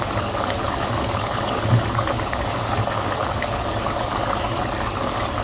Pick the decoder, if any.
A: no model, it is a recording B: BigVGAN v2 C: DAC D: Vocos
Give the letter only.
C